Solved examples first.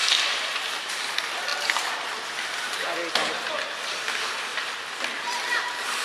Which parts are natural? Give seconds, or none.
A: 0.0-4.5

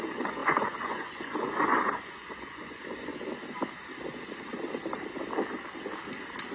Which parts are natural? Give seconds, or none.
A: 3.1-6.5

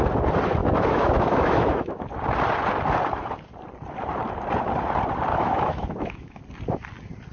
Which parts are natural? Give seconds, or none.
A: 0.0-0.6; 2.1-5.3; 6.4-7.3

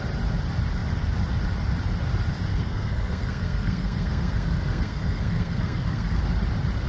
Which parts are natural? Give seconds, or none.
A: 0.0-2.5; 6.2-6.9